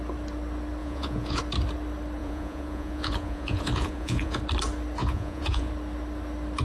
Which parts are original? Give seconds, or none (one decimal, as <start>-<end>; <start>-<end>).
0.0-0.8; 1.4-2.2; 4.4-5.0; 5.7-6.6